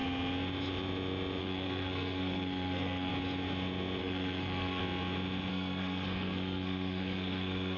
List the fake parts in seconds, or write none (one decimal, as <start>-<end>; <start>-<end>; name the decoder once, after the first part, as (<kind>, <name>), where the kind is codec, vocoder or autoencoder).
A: 1.4-3.1 (codec, SNAC); 4.0-4.8; 5.5-7.8

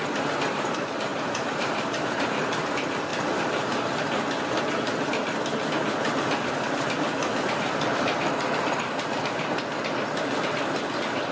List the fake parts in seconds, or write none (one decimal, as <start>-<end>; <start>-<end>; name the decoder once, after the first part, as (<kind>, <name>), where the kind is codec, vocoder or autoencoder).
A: 1.1-2.7 (vocoder, BigVGAN v2)

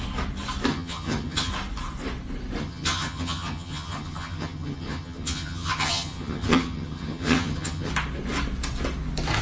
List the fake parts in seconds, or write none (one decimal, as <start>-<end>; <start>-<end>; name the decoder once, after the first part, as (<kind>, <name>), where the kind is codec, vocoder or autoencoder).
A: 0.7-1.5 (vocoder, HiFi-GAN); 2.6-7.9

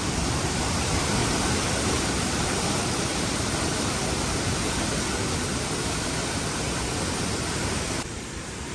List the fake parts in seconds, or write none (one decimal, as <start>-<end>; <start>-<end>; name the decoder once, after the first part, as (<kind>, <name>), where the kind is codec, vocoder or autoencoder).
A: 0.0-1.2 (vocoder, BigVGAN v2); 1.8-4.0; 7.8-8.7

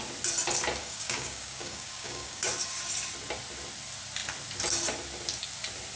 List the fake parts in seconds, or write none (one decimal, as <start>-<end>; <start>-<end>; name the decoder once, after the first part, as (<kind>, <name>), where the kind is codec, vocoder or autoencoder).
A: 0.8-2.5 (codec, DAC)

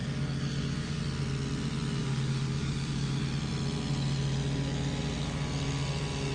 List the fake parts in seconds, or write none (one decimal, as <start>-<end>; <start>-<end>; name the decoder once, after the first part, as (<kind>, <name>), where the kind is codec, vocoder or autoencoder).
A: 0.0-1.0 (codec, DAC); 2.0-3.2

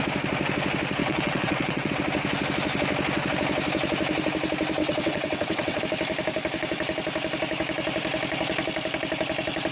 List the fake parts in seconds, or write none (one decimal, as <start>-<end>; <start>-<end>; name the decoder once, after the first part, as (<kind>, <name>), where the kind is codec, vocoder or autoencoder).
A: 1.0-1.9 (vocoder, WaveNeXt); 4.8-5.8

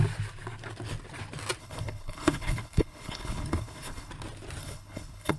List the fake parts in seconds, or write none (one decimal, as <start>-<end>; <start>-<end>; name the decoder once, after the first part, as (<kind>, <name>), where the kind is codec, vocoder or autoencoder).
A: 1.6-4.1 (codec, HILCodec); 4.6-5.4